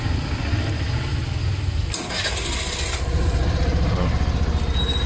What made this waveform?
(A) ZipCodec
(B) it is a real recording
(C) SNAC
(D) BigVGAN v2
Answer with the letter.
B